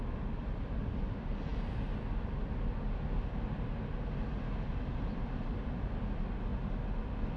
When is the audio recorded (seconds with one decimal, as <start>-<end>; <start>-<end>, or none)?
0.0-7.4